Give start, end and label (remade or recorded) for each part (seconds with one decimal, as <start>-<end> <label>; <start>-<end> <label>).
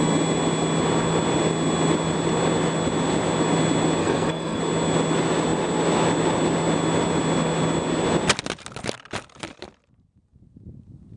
0.0-4.0 recorded; 4.0-4.6 remade; 4.6-11.2 recorded